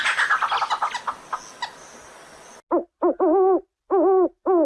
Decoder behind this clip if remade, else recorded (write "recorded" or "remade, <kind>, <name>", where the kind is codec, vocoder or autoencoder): recorded